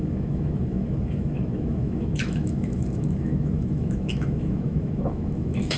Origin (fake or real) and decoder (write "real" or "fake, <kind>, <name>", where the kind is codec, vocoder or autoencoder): fake, autoencoder, DAC-VAE